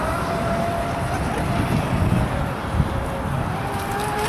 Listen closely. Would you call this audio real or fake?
real